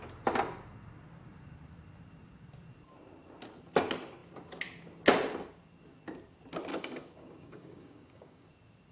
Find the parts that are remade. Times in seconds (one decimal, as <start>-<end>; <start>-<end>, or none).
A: 6.7-8.5